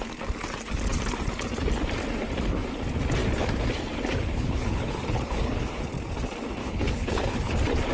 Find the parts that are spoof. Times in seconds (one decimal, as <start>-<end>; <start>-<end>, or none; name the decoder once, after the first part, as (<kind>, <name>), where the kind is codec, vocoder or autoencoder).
4.3-5.8 (codec, HILCodec); 6.6-7.5